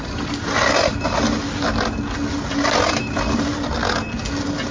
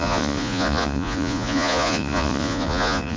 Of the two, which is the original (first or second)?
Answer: first